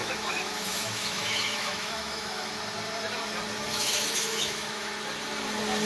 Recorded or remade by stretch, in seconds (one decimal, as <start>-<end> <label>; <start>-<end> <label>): 0.0-2.5 remade; 2.5-3.7 recorded; 3.7-4.9 remade; 4.9-5.9 recorded